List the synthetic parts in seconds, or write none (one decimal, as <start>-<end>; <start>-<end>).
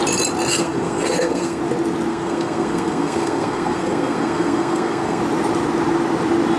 0.5-1.6; 2.1-5.2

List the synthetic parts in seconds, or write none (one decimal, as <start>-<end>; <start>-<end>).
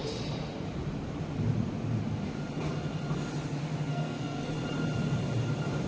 3.9-4.5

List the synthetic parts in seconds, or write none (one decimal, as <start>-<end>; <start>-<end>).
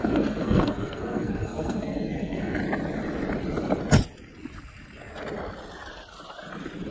0.0-2.6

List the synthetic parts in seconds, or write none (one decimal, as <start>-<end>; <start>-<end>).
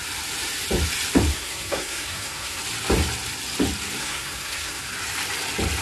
1.3-2.6; 4.0-4.8